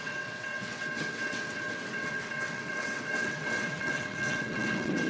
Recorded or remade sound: remade